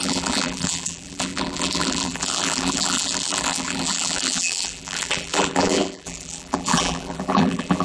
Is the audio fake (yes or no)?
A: yes